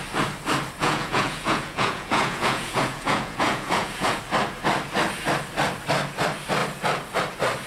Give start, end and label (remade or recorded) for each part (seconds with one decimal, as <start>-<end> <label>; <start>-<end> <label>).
0.0-0.8 recorded; 0.8-4.2 remade; 4.2-7.7 recorded